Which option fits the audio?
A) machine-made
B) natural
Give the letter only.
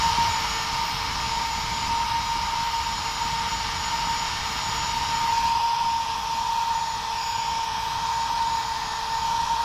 B